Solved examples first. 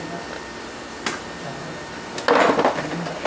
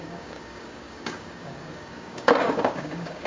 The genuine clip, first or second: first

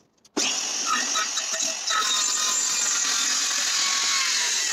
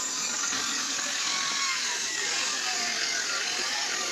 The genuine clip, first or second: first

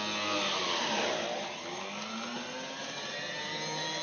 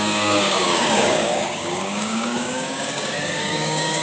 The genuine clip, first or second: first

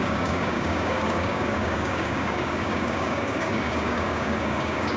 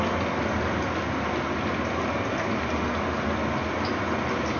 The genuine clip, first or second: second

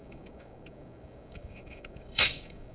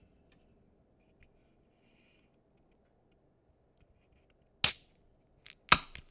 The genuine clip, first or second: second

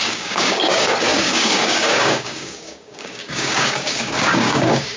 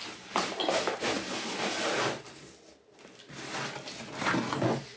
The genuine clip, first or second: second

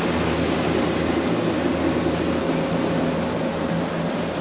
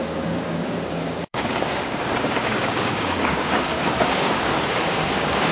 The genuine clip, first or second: first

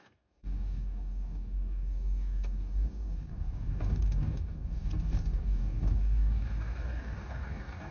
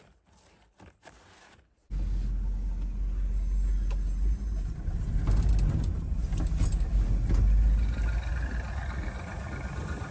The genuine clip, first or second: second